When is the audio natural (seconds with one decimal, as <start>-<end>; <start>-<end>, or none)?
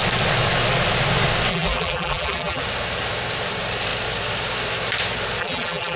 0.0-1.5; 2.6-5.4